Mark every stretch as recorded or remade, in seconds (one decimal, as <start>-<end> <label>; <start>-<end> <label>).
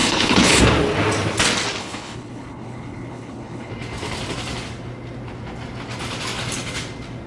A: 0.0-0.6 remade; 0.6-1.8 recorded; 1.8-3.7 remade; 3.7-7.3 recorded